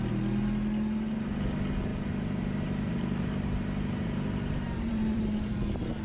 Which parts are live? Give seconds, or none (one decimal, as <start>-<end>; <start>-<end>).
0.0-1.9; 5.5-6.0